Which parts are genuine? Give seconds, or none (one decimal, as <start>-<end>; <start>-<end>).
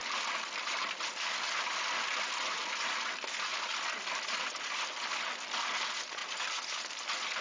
0.0-7.4